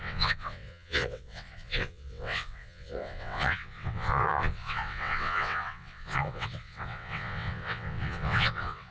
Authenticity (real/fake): fake